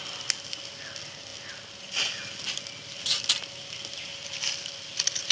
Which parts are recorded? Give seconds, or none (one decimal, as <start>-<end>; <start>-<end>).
0.0-5.3